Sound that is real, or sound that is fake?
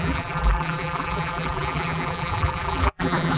fake